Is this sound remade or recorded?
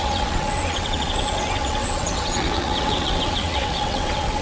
remade